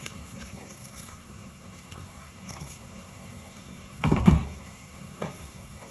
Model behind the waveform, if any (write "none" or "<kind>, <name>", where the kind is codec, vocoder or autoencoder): codec, SNAC